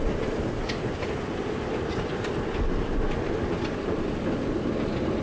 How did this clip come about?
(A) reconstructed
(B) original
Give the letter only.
B